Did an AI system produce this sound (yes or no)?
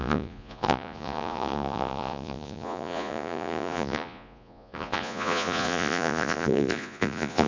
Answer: yes